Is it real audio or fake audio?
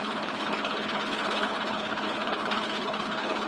fake